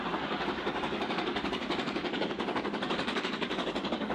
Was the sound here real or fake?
fake